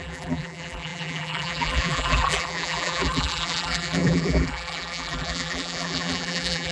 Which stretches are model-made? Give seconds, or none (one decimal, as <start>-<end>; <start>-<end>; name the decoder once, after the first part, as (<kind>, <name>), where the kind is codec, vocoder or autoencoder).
0.0-6.7 (vocoder, BigVGAN v2)